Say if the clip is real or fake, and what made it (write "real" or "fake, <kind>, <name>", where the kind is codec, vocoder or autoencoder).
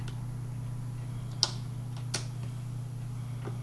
real